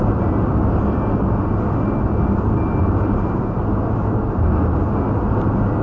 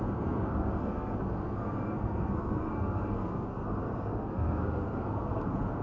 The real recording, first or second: first